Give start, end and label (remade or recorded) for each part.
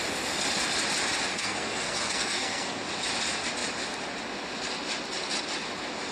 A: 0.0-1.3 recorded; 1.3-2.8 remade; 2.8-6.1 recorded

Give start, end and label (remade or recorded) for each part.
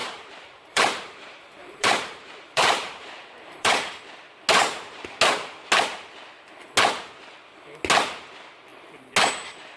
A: 0.0-3.9 remade; 3.9-9.8 recorded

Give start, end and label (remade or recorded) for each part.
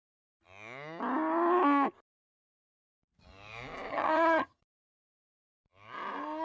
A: 0.0-3.9 recorded; 3.9-4.6 remade; 4.6-6.4 recorded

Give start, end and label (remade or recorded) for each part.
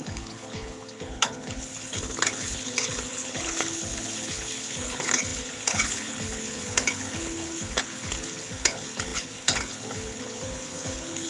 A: 0.0-11.3 remade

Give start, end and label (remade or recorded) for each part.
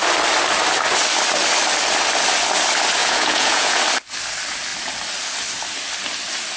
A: 0.0-3.0 recorded; 3.0-3.8 remade; 3.8-6.6 recorded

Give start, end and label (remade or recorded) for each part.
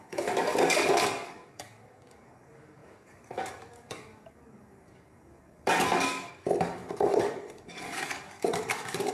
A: 0.0-9.1 remade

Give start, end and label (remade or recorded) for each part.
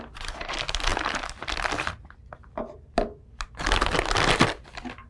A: 0.0-5.1 recorded